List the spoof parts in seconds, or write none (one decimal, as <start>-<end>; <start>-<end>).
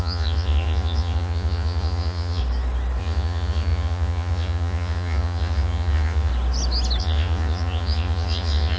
0.0-2.4; 3.0-6.3; 7.0-8.8